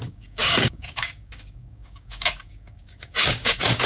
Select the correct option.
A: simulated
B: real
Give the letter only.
A